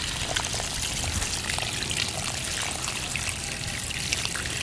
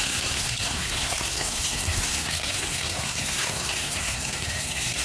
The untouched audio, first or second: first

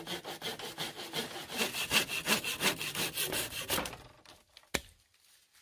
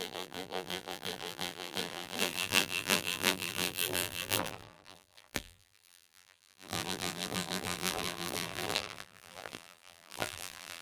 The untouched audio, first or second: first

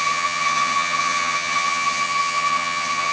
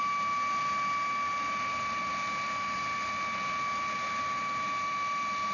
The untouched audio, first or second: second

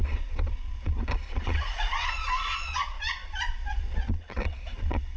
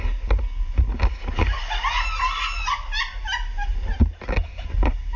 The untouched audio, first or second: second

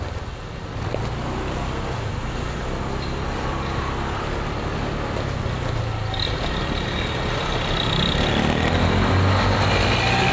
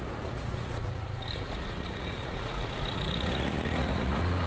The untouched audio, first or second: first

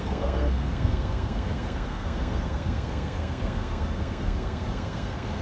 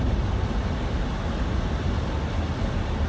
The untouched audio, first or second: second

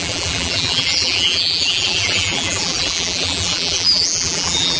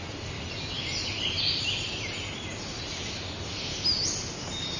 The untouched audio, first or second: second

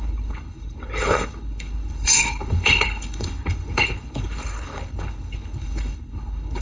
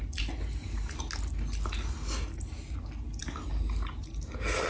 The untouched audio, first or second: second